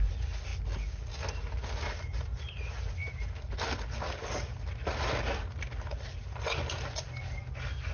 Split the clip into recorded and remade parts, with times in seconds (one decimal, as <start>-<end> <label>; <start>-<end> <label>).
0.0-7.9 recorded